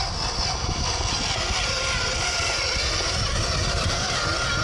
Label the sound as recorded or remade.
recorded